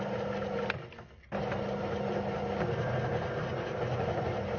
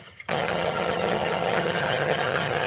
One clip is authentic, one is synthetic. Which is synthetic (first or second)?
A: second